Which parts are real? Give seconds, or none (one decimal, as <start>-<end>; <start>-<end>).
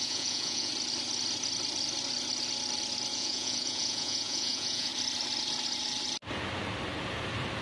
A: 0.7-3.1; 4.9-7.6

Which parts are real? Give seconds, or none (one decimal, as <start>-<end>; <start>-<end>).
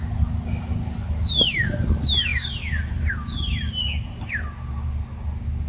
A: 0.0-5.7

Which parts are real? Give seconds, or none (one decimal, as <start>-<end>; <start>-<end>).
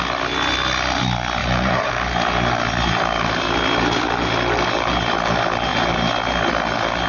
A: 0.0-1.4; 1.9-7.1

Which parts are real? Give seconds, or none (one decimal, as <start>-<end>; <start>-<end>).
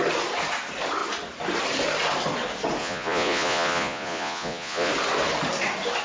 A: 0.0-2.8; 4.9-6.0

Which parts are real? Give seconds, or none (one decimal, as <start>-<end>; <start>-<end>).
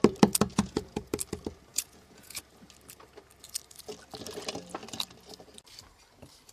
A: 0.0-0.5; 1.0-1.7; 2.4-6.5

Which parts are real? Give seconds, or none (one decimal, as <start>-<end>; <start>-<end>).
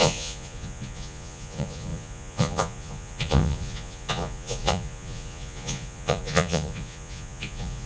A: none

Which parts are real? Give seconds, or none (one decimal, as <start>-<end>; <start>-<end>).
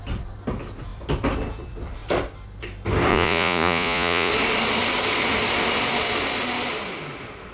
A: 0.0-3.1; 4.3-7.5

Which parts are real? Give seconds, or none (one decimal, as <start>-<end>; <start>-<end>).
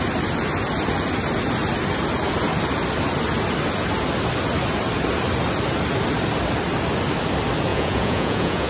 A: 0.0-7.7